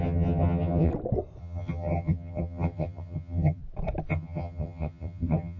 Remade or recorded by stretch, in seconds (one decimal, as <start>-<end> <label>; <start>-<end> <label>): 0.0-0.9 remade; 0.9-1.4 recorded; 1.4-3.6 remade; 3.6-4.1 recorded; 4.1-5.6 remade